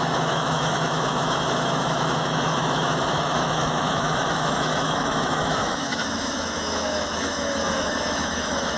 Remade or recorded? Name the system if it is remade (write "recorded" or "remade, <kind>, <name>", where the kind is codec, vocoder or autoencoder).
remade, autoencoder, DAC-VAE